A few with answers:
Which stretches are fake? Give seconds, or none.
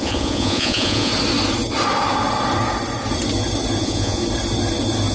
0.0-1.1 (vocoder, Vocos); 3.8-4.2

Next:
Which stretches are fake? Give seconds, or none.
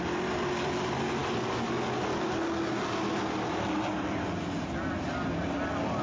none